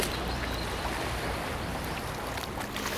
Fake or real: real